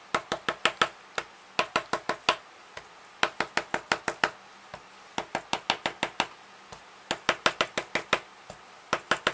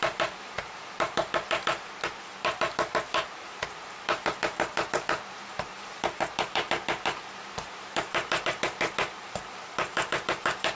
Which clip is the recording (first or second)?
first